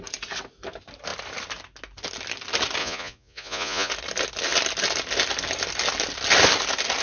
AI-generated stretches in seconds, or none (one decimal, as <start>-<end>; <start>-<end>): 2.8-3.9